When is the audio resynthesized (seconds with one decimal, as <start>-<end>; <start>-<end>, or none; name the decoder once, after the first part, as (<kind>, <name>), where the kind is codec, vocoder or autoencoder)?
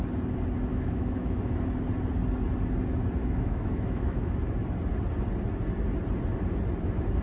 0.7-1.4 (autoencoder, DAC-VAE); 3.2-4.3